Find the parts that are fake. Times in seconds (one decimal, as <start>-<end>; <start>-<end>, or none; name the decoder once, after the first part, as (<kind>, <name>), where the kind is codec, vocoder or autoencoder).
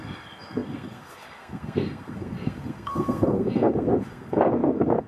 0.0-5.1 (codec, SNAC)